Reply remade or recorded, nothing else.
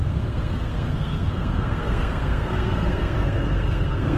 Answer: remade